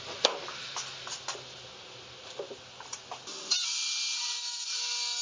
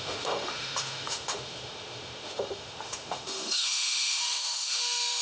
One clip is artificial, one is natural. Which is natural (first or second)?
first